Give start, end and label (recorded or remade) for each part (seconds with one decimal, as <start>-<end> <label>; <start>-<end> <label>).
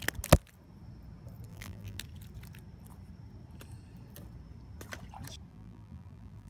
0.0-1.5 recorded; 1.5-2.0 remade; 2.0-5.5 recorded; 5.5-6.5 remade